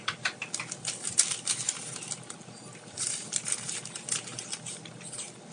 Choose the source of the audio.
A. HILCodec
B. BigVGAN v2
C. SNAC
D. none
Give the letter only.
D